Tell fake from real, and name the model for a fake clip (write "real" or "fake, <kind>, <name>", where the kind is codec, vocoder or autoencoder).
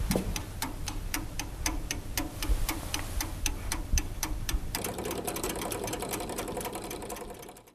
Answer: fake, vocoder, BigVGAN v2